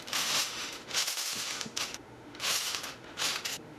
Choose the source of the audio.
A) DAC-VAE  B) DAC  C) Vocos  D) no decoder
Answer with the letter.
A